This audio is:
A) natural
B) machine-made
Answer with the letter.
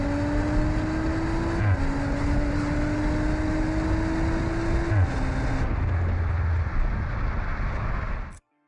A